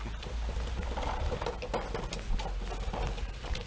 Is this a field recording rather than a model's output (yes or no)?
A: yes